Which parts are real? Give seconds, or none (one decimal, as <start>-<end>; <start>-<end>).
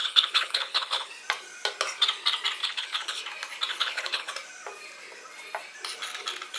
1.1-2.6; 3.2-3.7; 4.3-6.6